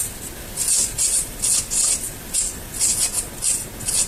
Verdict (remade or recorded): recorded